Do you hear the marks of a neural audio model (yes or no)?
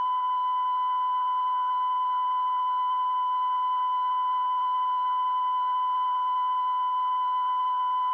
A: yes